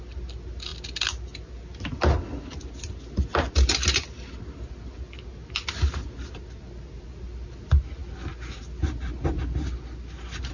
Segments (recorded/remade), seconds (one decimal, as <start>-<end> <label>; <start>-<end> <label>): 0.0-10.5 recorded